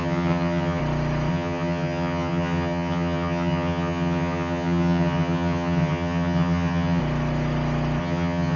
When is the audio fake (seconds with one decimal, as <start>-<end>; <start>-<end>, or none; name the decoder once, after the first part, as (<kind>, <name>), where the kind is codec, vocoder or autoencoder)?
0.0-0.8 (vocoder, HiFi-GAN); 1.3-7.0; 8.0-8.6